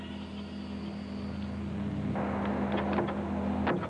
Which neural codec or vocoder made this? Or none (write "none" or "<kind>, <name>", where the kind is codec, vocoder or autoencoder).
none